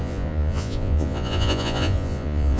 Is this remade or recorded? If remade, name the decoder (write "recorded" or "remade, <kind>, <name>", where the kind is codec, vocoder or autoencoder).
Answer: remade, vocoder, Vocos